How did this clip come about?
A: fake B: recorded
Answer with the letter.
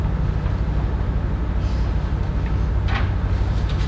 B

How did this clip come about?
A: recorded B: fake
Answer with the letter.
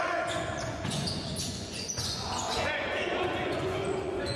B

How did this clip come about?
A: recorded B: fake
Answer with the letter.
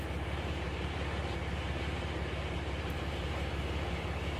B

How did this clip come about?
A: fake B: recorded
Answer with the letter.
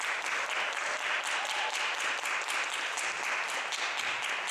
B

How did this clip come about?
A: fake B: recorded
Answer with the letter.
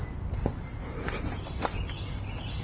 B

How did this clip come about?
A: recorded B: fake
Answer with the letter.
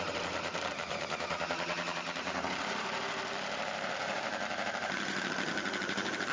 B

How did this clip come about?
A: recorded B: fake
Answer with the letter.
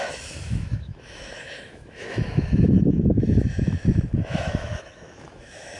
B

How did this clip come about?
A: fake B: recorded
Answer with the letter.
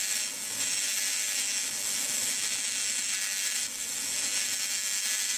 A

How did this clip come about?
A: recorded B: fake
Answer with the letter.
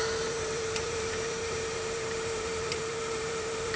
B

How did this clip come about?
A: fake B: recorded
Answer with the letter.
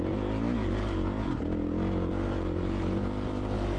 B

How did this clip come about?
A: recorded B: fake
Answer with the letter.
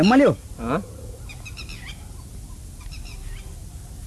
A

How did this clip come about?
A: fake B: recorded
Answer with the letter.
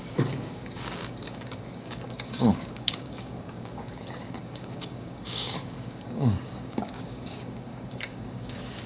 A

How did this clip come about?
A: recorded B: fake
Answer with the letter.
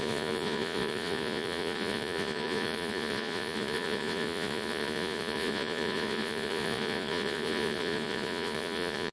B